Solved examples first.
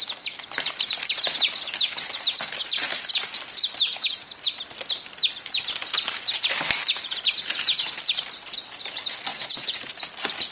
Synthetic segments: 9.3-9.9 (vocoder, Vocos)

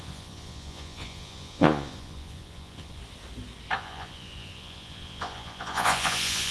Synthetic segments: 0.0-3.0 (vocoder, Vocos); 3.8-6.5

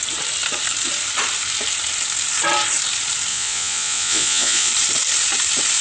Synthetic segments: 3.3-4.7 (vocoder, Vocos)

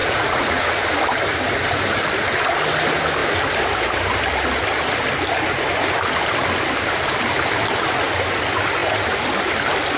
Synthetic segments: 0.0-0.8 (vocoder, Vocos)